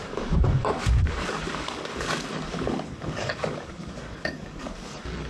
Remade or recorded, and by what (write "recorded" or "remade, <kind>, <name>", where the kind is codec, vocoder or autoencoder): remade, codec, DAC